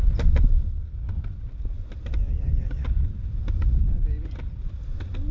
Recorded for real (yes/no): yes